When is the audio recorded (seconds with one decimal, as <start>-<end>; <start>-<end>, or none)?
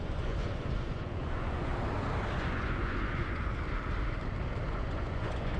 1.7-2.3; 3.5-4.7